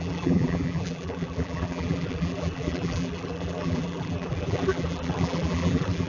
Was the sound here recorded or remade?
remade